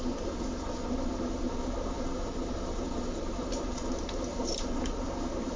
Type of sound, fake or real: real